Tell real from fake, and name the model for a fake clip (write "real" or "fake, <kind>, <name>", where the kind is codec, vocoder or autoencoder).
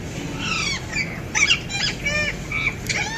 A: real